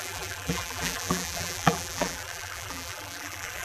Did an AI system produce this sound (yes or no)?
yes